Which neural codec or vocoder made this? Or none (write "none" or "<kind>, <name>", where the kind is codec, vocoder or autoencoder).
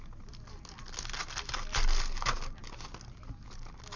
none